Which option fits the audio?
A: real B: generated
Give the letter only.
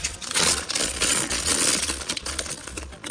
B